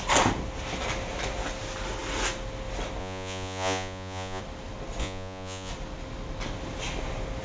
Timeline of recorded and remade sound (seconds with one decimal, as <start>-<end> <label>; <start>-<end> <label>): 0.0-3.0 recorded; 3.0-4.4 remade; 4.4-5.0 recorded; 5.0-5.7 remade; 5.7-7.4 recorded